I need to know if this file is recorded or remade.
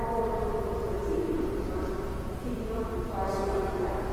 recorded